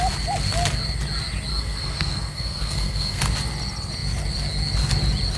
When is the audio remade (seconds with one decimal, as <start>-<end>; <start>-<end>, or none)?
1.5-3.2